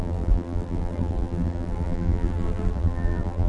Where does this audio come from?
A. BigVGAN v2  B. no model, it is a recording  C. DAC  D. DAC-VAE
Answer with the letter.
A